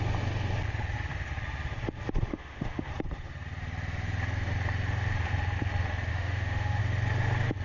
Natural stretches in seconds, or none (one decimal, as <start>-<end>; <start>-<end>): 0.0-2.3; 2.9-6.1; 6.8-7.6